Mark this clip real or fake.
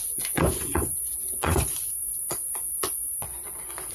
fake